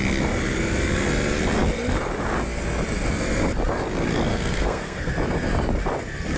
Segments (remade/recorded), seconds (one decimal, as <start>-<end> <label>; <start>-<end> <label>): 0.0-4.3 recorded; 4.3-5.1 remade; 5.1-6.4 recorded